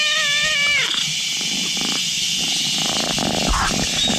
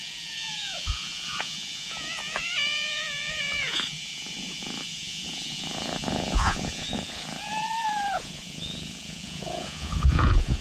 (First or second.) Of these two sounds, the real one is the first